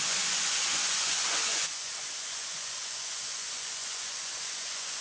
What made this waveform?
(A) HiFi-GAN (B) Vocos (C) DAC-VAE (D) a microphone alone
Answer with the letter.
B